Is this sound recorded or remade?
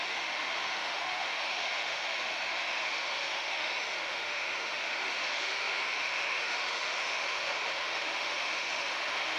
remade